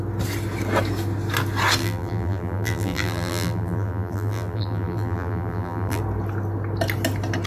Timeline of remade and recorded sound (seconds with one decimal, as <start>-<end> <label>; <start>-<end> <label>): 0.0-1.8 recorded; 1.8-6.0 remade; 6.0-7.5 recorded